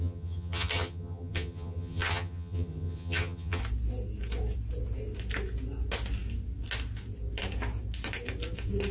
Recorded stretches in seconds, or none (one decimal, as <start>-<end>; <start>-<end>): 3.6-8.9